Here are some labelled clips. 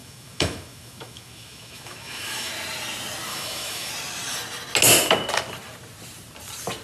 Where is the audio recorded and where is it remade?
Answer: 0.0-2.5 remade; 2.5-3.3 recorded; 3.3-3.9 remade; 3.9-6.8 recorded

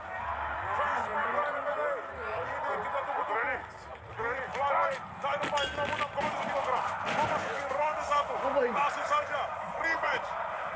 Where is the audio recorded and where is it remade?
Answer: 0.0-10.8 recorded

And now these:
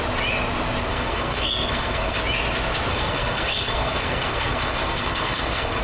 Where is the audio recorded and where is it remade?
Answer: 0.0-0.9 recorded; 0.9-2.2 remade; 2.2-2.9 recorded; 2.9-5.8 remade

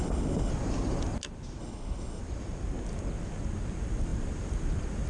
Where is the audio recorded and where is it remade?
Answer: 0.0-0.5 remade; 0.5-1.6 recorded; 1.6-2.2 remade; 2.2-5.1 recorded

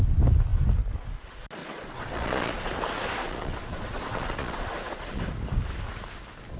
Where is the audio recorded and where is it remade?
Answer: 0.0-1.6 recorded; 1.6-2.7 remade; 2.7-3.2 recorded; 3.2-5.2 remade; 5.2-6.6 recorded

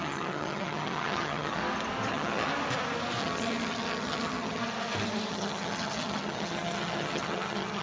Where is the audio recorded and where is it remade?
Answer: 0.0-1.6 remade; 1.6-2.1 recorded; 2.1-2.5 remade; 2.5-3.2 recorded; 3.2-4.6 remade; 4.6-5.3 recorded; 5.3-7.8 remade

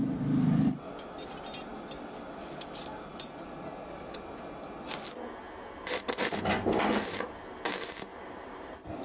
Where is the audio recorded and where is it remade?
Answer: 0.0-0.9 remade; 0.9-8.1 recorded; 8.1-9.0 remade

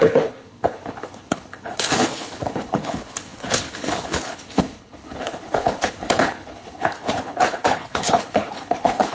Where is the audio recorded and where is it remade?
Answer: 0.0-9.1 remade